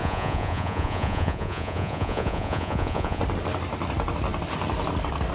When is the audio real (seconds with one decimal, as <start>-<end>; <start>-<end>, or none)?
3.2-5.3